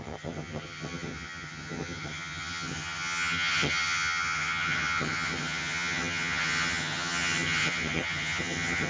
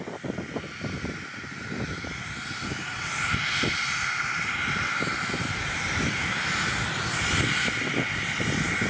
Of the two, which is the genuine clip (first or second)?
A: second